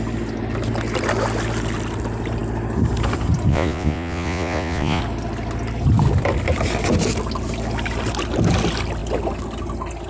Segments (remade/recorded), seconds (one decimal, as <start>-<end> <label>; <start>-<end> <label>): 0.0-3.5 recorded; 3.5-5.0 remade; 5.0-10.1 recorded